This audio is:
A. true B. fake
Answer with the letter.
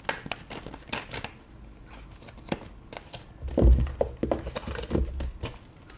A